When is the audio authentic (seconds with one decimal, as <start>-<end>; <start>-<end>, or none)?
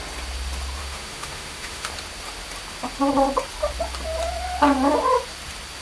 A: 0.0-0.8; 1.9-5.8